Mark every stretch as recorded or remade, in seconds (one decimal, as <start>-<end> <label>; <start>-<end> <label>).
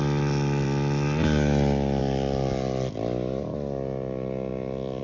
0.0-5.0 recorded